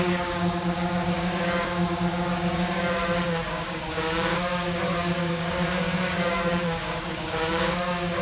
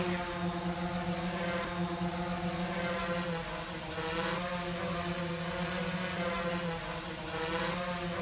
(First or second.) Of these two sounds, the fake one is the first